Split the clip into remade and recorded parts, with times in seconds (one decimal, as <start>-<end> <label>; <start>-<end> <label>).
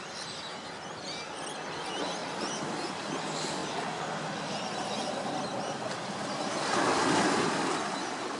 0.0-2.2 recorded; 2.2-2.9 remade; 2.9-8.4 recorded